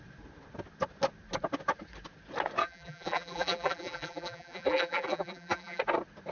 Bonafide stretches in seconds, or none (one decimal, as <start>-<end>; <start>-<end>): 0.0-2.6; 5.8-6.3